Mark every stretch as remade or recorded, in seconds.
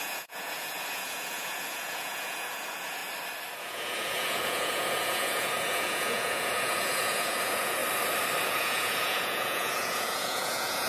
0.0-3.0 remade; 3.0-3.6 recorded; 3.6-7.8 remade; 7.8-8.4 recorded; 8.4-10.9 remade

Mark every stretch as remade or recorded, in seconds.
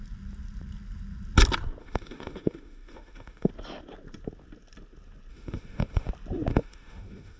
0.0-1.8 recorded; 1.8-3.5 remade; 3.5-5.3 recorded; 5.3-6.1 remade; 6.1-6.5 recorded; 6.5-7.4 remade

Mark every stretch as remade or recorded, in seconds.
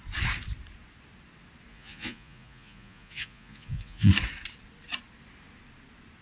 0.0-1.7 recorded; 1.7-4.1 remade; 4.1-6.2 recorded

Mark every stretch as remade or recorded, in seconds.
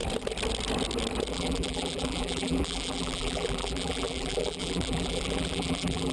0.0-1.3 recorded; 1.3-6.1 remade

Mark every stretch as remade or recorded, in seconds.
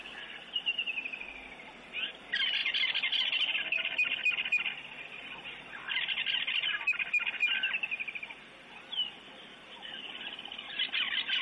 0.0-0.7 recorded; 0.7-1.5 remade; 1.5-7.4 recorded; 7.4-10.9 remade; 10.9-11.4 recorded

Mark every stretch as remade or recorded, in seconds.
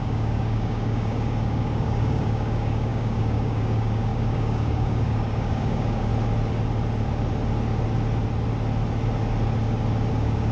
0.0-6.1 remade; 6.1-10.1 recorded; 10.1-10.5 remade